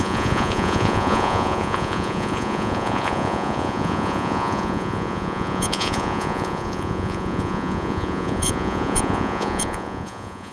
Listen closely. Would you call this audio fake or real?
fake